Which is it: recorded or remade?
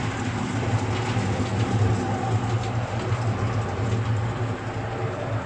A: recorded